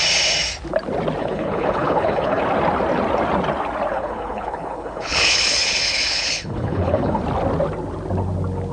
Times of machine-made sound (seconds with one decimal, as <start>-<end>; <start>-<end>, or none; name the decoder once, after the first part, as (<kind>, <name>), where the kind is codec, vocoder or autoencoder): 1.2-2.4 (codec, HILCodec); 3.9-7.2